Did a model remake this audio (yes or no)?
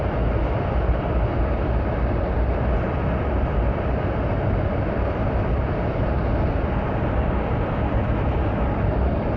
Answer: yes